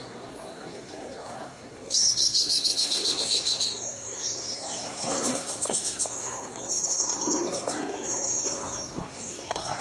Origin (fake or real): fake